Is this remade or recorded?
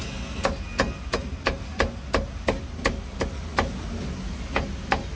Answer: recorded